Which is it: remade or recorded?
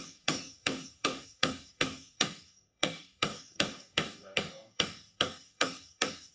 remade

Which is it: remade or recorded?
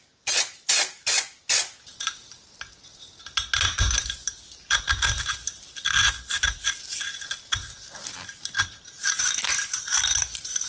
recorded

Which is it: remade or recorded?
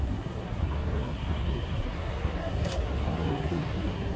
remade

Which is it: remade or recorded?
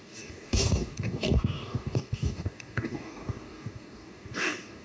remade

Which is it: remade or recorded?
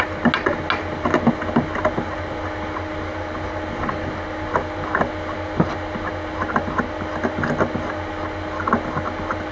recorded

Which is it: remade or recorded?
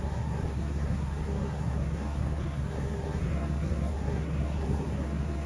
remade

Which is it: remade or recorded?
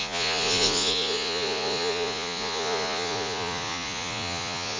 remade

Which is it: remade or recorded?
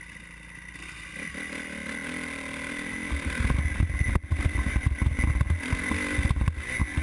recorded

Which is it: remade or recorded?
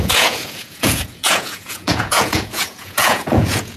remade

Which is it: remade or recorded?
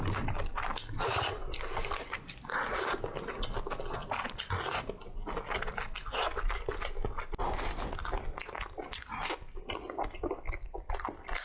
recorded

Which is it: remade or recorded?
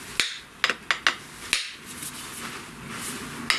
recorded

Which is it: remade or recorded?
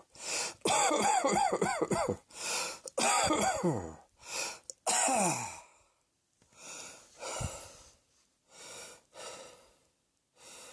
recorded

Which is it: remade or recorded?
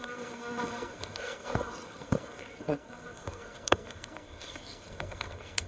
remade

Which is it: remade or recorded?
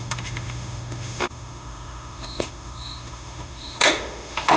remade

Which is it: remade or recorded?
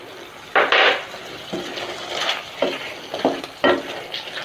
recorded